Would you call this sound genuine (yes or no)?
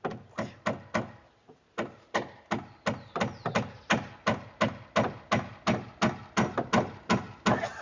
yes